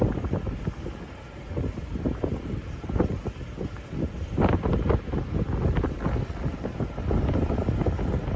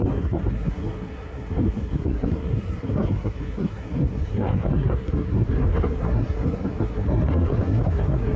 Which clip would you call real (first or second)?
first